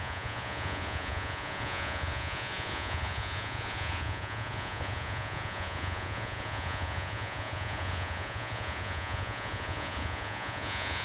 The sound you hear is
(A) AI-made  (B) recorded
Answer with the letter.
A